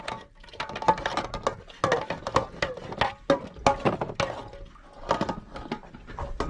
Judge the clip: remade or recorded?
recorded